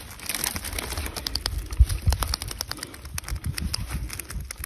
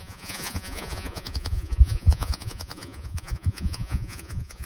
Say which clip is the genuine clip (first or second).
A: first